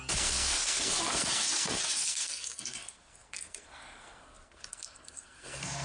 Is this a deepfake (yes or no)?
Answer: yes